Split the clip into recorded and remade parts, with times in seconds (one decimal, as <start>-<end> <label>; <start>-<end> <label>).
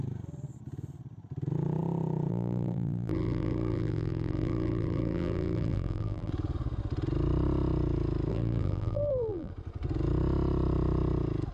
0.0-2.3 recorded; 2.3-6.3 remade; 6.3-8.3 recorded; 8.3-9.5 remade; 9.5-11.5 recorded